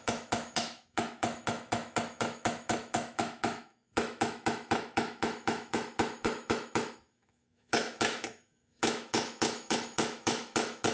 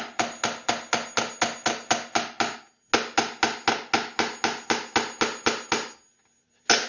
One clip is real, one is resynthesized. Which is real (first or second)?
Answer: second